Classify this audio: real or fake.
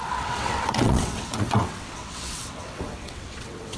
fake